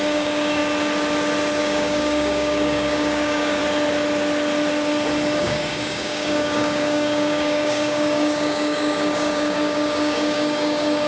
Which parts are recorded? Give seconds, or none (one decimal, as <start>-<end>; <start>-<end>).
0.6-1.6; 3.6-5.4